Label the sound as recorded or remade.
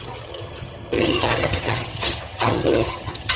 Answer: remade